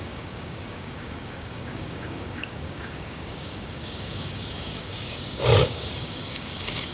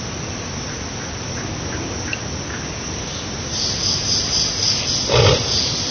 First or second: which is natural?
second